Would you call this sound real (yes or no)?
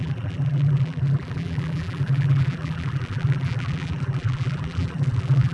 no